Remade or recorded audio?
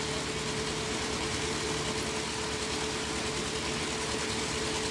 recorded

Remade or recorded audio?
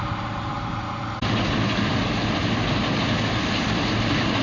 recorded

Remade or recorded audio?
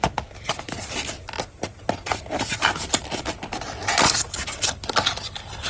recorded